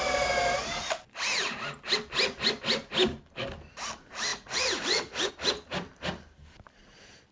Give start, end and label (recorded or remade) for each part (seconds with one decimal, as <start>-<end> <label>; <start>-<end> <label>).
0.0-4.3 recorded; 4.3-5.3 remade; 5.3-7.3 recorded